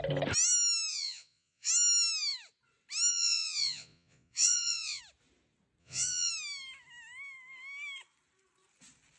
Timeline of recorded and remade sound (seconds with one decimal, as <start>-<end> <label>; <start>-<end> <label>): 0.0-0.9 recorded; 0.9-1.7 remade; 1.7-3.1 recorded; 3.1-5.0 remade; 5.0-5.8 recorded; 5.8-6.3 remade; 6.3-9.2 recorded